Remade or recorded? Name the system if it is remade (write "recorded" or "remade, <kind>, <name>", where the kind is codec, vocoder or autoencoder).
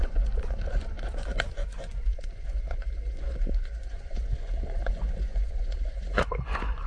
remade, vocoder, Vocos